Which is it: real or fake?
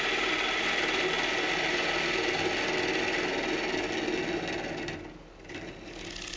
real